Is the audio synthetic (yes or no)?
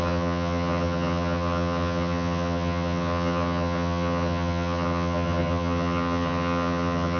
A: yes